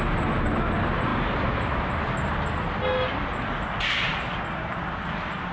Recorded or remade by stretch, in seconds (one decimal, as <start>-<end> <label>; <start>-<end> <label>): 0.0-5.5 recorded